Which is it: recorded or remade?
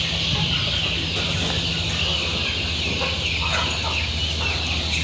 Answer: recorded